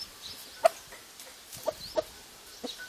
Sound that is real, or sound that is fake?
real